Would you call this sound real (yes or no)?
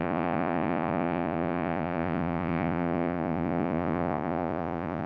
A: no